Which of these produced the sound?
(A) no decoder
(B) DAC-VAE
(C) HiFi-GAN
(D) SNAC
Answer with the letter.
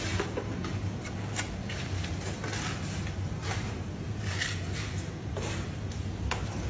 A